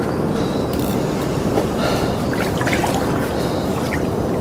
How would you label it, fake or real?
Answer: fake